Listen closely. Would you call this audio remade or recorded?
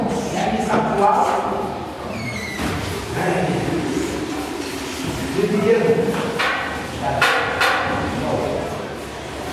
remade